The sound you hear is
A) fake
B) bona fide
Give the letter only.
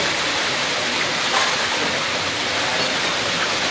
B